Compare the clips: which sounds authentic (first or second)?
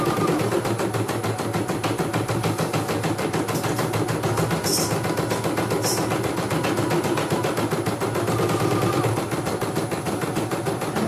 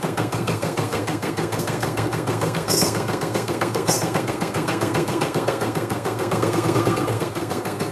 first